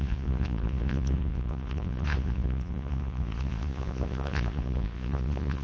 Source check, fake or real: fake